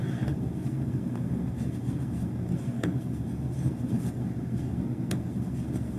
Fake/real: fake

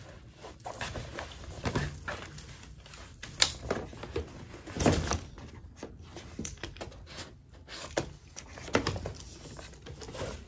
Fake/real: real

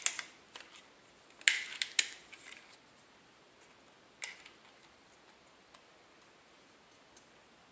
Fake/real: real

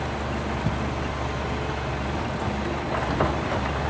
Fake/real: real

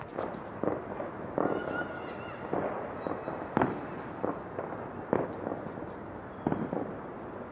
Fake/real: real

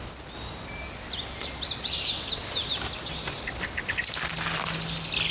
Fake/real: real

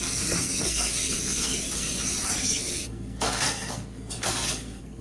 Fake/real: fake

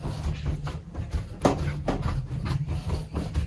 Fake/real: real